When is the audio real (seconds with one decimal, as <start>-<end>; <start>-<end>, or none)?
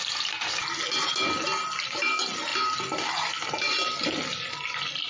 0.0-5.1